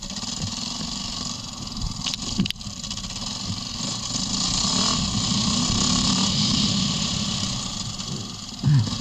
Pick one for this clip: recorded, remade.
recorded